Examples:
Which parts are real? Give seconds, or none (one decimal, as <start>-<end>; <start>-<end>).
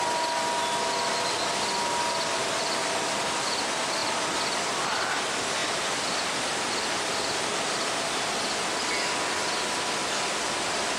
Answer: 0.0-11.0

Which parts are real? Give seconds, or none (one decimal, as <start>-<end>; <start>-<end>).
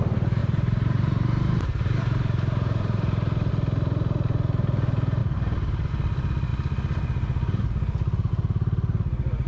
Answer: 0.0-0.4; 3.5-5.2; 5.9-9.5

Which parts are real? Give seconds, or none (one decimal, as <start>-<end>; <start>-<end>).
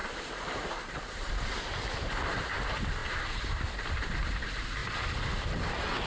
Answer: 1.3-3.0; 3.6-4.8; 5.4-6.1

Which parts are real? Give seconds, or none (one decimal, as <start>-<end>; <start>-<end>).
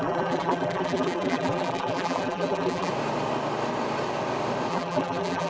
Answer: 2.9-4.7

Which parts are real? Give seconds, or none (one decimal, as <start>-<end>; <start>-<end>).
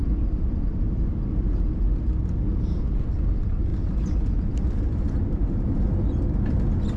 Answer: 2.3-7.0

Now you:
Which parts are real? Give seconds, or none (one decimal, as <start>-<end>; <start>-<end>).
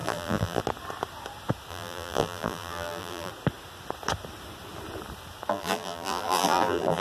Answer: 0.6-1.7; 3.3-5.5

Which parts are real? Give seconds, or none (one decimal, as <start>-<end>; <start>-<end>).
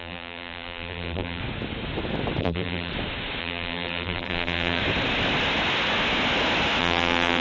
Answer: 1.4-2.4; 2.9-3.4; 4.8-6.8